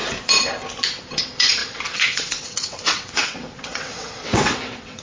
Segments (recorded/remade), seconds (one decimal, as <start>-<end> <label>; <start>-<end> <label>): 0.0-1.0 recorded; 1.0-5.0 remade